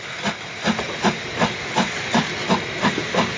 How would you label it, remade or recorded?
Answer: recorded